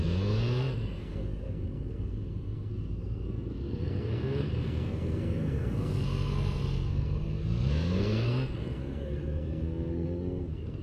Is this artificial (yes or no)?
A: yes